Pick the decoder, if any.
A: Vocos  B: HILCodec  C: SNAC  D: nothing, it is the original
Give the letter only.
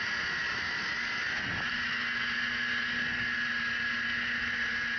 D